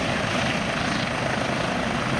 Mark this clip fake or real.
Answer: real